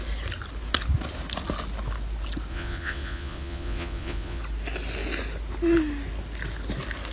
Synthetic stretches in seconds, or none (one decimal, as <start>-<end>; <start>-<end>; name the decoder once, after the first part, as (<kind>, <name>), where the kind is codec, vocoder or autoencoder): 2.5-4.4 (vocoder, Vocos)